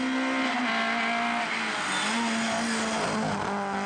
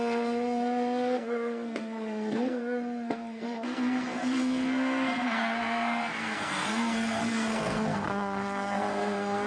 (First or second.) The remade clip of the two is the second